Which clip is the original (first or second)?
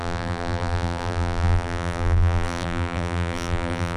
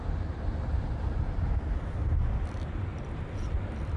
second